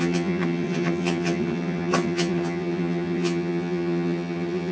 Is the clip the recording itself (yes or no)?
no